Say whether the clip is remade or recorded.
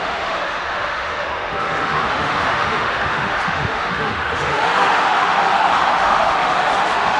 remade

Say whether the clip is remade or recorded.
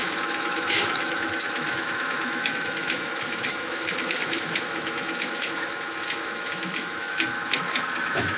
remade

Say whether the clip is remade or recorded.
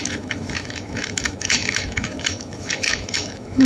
remade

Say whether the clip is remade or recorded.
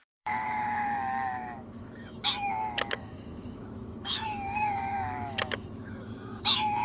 remade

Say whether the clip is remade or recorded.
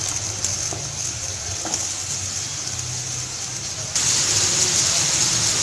recorded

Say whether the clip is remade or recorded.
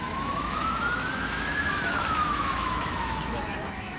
remade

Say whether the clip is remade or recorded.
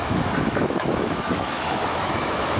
remade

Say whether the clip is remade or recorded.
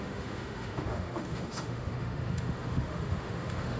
remade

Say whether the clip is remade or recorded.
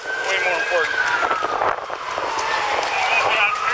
recorded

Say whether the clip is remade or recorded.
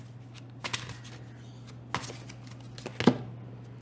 recorded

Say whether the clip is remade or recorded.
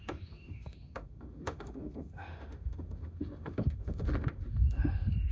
remade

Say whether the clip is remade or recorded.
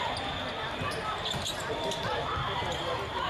recorded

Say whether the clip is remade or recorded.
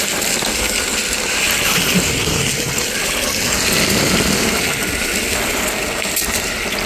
recorded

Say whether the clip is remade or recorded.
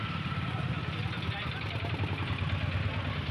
recorded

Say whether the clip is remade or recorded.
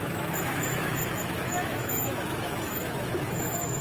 remade